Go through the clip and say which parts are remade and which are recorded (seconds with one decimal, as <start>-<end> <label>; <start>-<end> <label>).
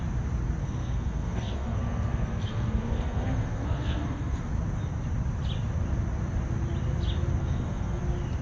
0.0-0.6 recorded; 0.6-4.5 remade; 4.5-7.4 recorded; 7.4-8.0 remade; 8.0-8.4 recorded